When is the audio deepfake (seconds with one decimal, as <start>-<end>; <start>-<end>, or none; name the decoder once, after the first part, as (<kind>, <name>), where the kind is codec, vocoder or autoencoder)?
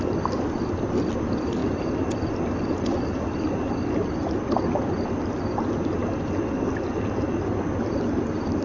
none